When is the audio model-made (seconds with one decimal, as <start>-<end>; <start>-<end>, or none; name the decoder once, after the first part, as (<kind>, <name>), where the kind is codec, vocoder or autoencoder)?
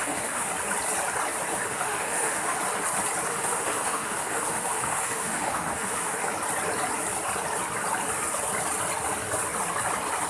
0.0-0.5 (autoencoder, DAC-VAE); 1.5-2.6; 3.3-6.3